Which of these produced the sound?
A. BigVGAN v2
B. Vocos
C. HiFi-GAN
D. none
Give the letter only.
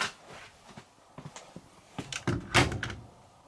D